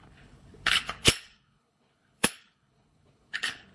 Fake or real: fake